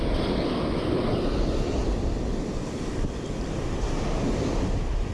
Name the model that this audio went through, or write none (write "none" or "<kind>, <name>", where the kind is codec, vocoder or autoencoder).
none